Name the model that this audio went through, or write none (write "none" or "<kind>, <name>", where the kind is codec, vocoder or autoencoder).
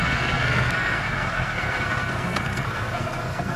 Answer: codec, SNAC